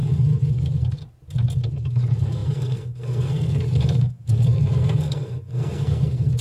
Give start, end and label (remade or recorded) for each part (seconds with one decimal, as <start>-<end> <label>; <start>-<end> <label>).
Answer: 0.0-1.0 remade; 1.0-1.6 recorded; 1.6-6.4 remade